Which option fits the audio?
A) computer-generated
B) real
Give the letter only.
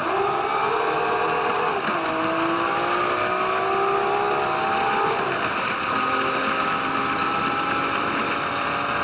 B